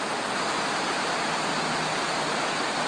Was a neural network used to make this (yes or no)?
no